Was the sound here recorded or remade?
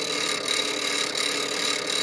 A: recorded